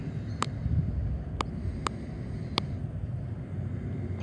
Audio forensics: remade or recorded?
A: recorded